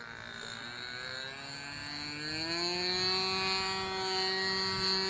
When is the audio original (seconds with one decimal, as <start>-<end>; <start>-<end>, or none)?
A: 0.0-5.1